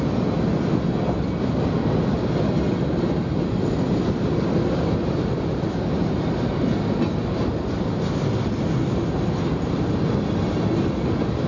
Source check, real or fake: real